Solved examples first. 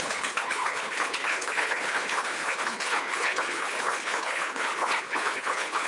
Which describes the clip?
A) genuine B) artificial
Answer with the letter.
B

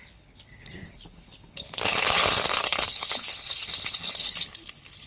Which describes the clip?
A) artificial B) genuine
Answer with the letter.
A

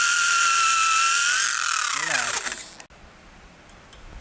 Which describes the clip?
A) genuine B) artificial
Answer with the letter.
A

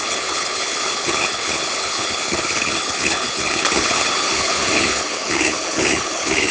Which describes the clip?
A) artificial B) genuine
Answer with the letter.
A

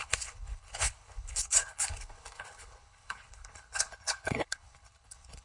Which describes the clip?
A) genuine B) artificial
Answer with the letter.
B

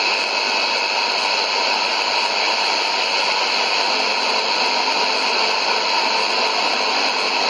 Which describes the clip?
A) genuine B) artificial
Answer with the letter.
A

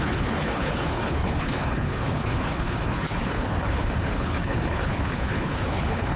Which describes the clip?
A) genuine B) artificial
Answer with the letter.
B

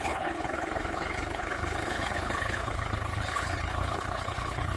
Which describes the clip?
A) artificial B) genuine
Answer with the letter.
A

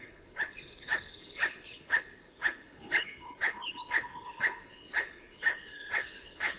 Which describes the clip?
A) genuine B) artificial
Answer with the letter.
B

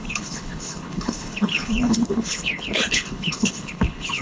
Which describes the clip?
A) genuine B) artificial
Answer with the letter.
B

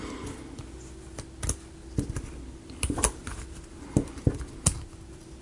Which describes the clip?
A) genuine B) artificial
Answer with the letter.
A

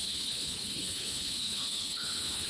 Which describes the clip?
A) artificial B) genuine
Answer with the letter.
A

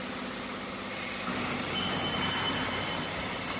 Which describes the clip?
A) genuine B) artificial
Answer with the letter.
A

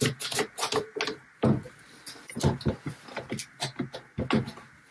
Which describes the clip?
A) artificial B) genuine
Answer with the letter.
B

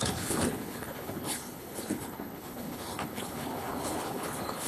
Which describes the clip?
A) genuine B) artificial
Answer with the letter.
B